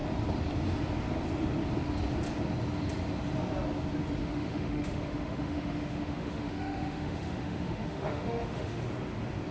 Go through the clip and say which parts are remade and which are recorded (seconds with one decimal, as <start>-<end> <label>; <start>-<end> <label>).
0.0-4.2 recorded; 4.2-8.8 remade; 8.8-9.5 recorded